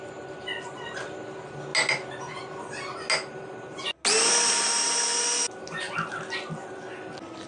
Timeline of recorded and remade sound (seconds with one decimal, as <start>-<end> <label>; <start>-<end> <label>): 0.0-7.5 recorded